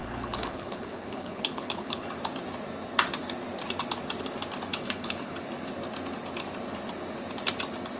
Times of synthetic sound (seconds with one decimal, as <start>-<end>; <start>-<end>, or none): 0.0-2.2; 4.7-5.4

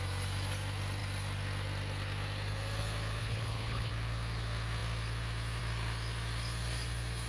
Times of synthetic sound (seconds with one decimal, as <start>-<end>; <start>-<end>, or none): 3.2-3.9

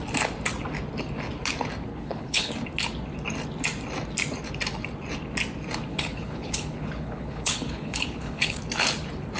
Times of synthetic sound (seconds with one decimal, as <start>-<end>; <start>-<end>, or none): 1.9-2.5; 5.9-8.6